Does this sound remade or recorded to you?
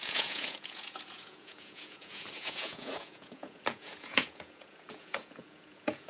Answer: remade